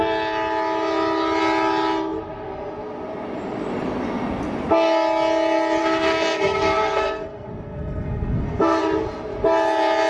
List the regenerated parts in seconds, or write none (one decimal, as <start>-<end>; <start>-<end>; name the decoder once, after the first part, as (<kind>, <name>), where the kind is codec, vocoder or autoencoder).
5.8-8.8 (codec, SNAC)